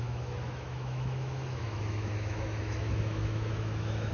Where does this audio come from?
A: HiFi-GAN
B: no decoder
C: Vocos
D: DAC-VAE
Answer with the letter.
D